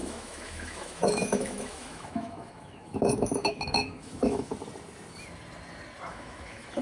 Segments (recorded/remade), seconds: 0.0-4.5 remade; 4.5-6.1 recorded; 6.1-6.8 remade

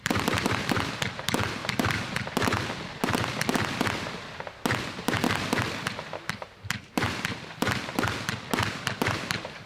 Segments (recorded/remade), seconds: 0.0-1.6 remade; 1.6-6.1 recorded; 6.1-7.3 remade; 7.3-8.5 recorded; 8.5-9.7 remade

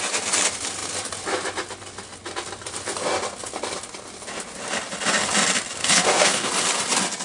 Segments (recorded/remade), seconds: 0.0-5.8 recorded; 5.8-6.5 remade; 6.5-7.2 recorded

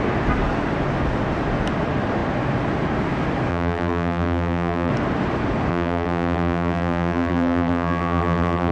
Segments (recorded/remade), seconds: 0.0-3.5 recorded; 3.5-4.9 remade; 4.9-5.7 recorded; 5.7-8.7 remade

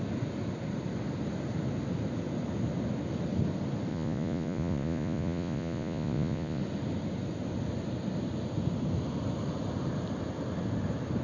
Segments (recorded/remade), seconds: 0.0-3.9 recorded; 3.9-6.6 remade; 6.6-11.2 recorded